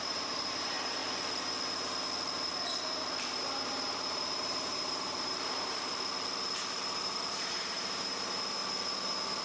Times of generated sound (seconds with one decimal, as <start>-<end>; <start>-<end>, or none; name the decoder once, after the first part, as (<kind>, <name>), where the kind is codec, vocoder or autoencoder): 0.0-1.0 (vocoder, BigVGAN v2); 3.3-5.9; 7.3-8.6